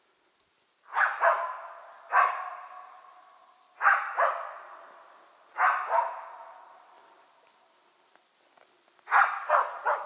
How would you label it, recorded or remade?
recorded